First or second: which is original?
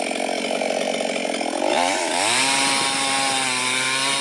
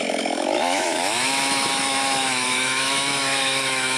first